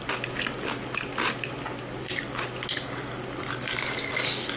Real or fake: real